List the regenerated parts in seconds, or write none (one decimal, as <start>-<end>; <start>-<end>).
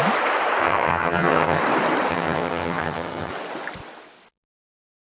0.6-1.6; 2.1-3.3